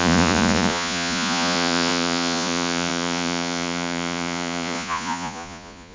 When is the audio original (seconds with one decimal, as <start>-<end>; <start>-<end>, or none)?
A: none